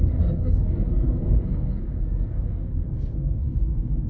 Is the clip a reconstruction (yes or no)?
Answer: yes